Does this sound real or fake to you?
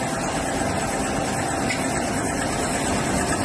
real